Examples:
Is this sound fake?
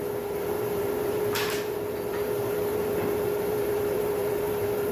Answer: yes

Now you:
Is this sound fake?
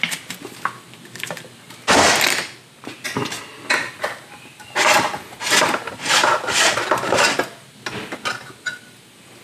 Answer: no